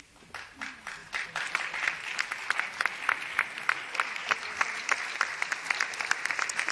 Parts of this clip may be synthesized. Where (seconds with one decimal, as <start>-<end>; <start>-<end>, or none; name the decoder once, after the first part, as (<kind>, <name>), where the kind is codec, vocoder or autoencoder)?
none